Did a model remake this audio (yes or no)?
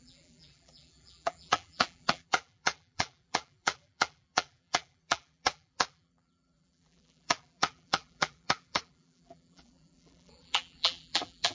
yes